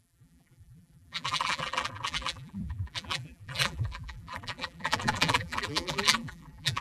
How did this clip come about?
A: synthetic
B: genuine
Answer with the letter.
A